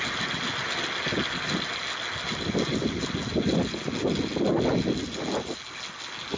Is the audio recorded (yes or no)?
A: yes